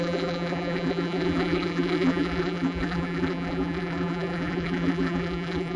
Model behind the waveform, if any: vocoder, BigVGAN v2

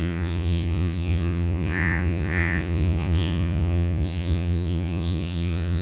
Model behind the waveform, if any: vocoder, Vocos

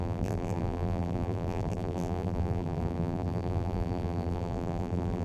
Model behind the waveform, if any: vocoder, BigVGAN v2